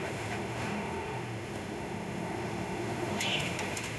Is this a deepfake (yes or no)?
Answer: yes